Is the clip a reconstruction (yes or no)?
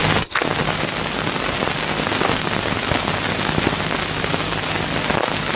no